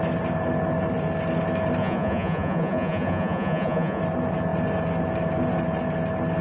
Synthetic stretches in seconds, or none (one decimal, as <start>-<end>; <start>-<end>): 1.8-4.0